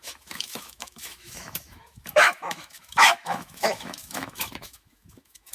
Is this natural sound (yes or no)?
no